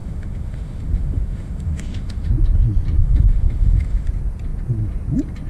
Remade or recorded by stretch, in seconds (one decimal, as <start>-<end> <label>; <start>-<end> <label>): 0.0-2.3 remade; 2.3-3.0 recorded; 3.0-4.1 remade; 4.1-5.5 recorded